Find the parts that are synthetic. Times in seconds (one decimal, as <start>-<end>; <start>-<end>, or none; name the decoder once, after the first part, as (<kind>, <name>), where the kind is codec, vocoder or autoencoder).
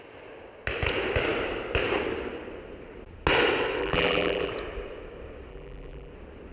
3.8-4.5 (vocoder, BigVGAN v2); 5.5-6.1